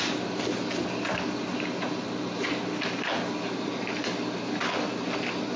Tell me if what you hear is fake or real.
real